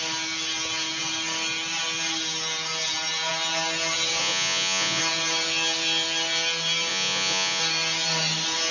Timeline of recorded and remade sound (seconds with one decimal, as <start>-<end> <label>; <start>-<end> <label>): 0.0-4.2 recorded; 4.2-5.0 remade; 5.0-6.9 recorded; 6.9-7.6 remade; 7.6-8.7 recorded